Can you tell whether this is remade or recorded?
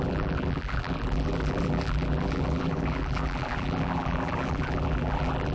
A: remade